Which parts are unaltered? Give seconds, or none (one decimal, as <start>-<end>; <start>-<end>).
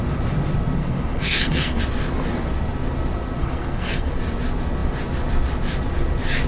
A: 0.0-0.8; 1.8-3.4; 4.1-6.5